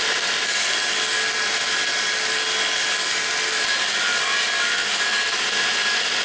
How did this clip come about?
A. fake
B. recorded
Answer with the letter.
B